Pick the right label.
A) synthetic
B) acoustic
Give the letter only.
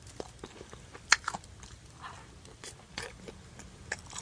A